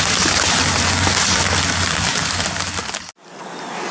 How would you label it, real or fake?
real